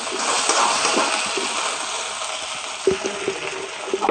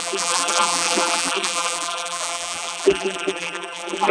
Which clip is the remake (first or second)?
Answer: second